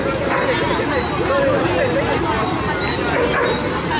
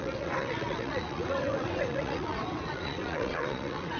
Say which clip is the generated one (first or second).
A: second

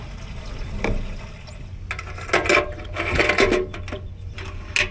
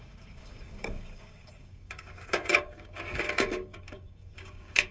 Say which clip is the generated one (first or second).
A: second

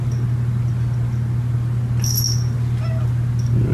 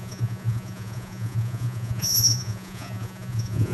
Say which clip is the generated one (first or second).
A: second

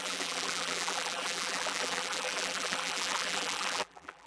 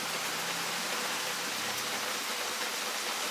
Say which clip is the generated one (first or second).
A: first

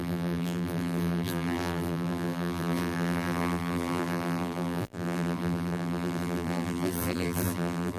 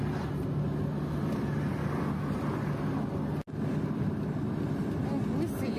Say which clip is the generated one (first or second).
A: first